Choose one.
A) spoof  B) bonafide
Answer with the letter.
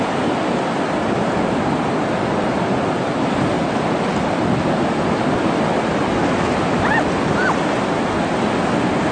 B